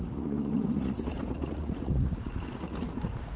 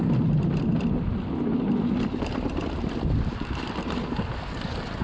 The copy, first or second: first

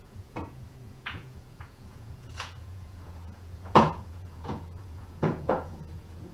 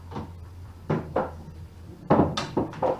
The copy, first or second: first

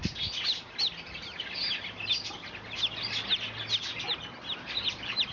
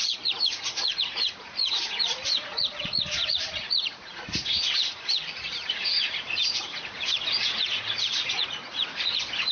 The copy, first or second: second